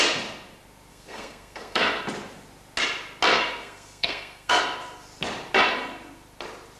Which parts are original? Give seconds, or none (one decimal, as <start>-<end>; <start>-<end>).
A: 0.0-0.9; 2.0-3.3; 4.6-6.8